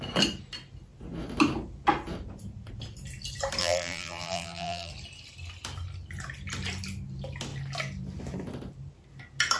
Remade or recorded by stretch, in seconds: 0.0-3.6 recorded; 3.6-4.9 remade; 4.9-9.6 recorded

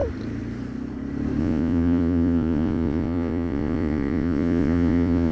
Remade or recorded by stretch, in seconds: 0.0-1.4 recorded; 1.4-5.3 remade

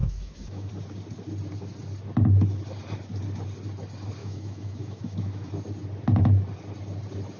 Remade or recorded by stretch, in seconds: 0.0-0.7 remade; 0.7-4.2 recorded; 4.2-5.5 remade; 5.5-7.4 recorded

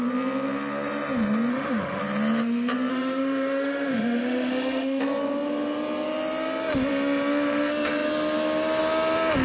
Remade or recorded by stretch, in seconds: 0.0-1.5 recorded; 1.5-2.0 remade; 2.0-2.9 recorded; 2.9-5.0 remade; 5.0-9.4 recorded

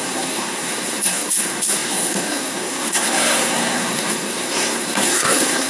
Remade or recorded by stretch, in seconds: 0.0-5.7 remade

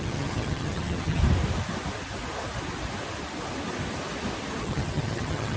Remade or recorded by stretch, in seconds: 0.0-1.2 remade; 1.2-4.6 recorded; 4.6-5.6 remade